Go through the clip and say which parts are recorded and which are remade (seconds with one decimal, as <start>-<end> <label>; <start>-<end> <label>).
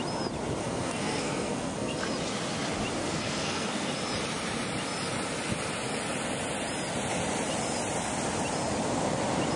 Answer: 0.0-0.6 recorded; 0.6-2.0 remade; 2.0-3.0 recorded; 3.0-3.9 remade; 3.9-9.6 recorded